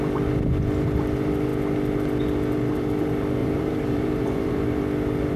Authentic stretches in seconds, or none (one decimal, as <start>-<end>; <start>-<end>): 0.0-3.4; 4.8-5.4